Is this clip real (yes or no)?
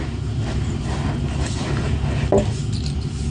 yes